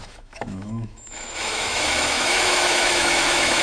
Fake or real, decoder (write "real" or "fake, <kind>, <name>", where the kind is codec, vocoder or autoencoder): fake, autoencoder, DAC-VAE